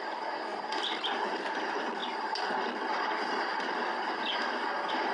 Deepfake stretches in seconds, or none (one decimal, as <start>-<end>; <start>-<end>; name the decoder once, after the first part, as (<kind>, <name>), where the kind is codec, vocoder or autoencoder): none